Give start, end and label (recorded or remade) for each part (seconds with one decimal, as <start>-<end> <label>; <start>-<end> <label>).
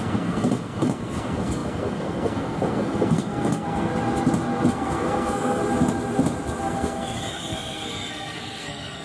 0.0-3.9 remade; 3.9-4.7 recorded; 4.7-5.6 remade; 5.6-6.6 recorded; 6.6-9.0 remade